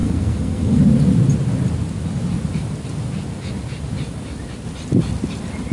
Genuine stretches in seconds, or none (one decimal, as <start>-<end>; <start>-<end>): 0.8-5.7

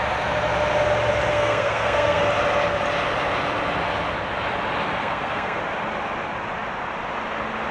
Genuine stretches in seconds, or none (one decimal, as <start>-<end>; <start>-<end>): 0.0-1.3; 2.2-5.0; 5.6-7.7

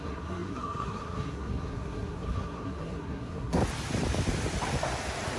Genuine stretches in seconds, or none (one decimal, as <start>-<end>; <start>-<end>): 3.6-5.4

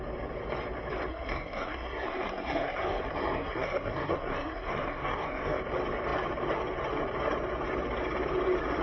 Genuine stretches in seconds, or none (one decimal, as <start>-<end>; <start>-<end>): 0.0-1.1; 5.6-8.8

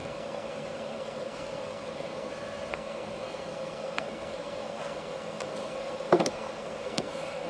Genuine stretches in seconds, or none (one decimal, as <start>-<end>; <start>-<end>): 2.3-2.7

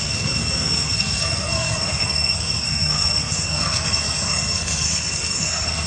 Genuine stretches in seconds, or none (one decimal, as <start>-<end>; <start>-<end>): none

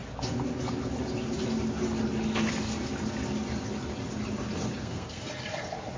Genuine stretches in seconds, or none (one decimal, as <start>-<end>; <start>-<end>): 0.0-4.8; 5.3-6.0

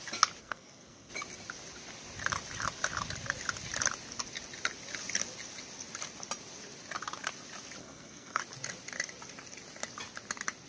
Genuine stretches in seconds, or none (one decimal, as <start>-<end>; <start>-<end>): 0.0-0.4; 1.1-7.8; 8.4-10.7